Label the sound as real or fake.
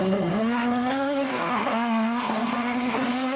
fake